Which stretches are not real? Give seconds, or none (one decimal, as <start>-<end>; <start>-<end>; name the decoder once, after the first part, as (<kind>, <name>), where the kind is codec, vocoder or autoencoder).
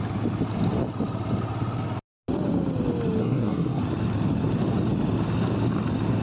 3.2-3.8 (codec, SNAC)